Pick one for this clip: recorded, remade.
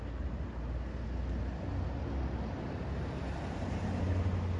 recorded